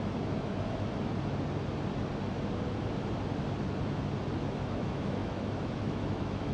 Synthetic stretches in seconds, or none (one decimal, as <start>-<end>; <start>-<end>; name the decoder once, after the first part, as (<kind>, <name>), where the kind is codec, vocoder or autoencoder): 0.0-1.1 (autoencoder, DAC-VAE); 4.4-6.5